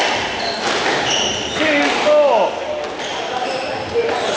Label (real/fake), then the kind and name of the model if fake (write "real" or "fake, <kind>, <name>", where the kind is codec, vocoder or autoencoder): real